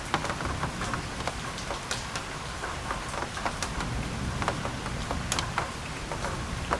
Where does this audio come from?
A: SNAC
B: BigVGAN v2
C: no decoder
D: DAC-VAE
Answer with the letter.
C